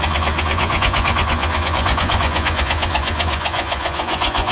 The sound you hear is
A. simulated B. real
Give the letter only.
A